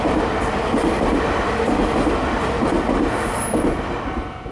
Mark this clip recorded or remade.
remade